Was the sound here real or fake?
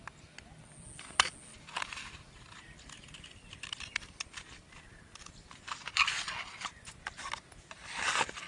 real